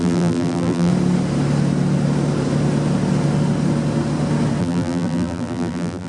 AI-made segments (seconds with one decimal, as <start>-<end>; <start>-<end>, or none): 0.0-0.9; 4.6-6.1